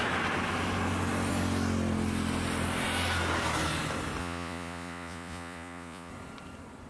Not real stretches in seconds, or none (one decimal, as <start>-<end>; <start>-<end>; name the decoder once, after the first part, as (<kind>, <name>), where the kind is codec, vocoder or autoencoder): 4.2-6.1 (vocoder, Vocos)